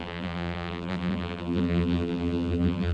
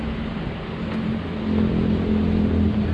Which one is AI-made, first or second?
first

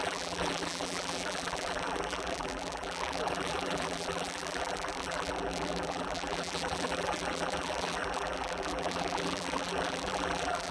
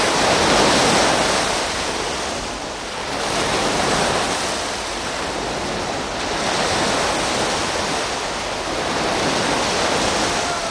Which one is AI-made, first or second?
first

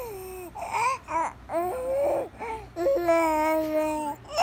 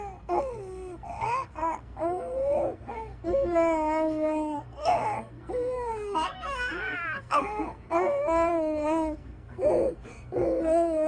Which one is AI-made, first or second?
second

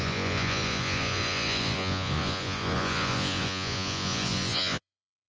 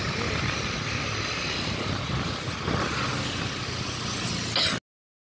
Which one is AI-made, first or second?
first